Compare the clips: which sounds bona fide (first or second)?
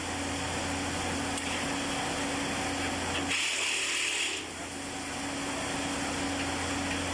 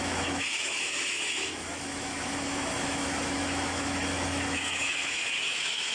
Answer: first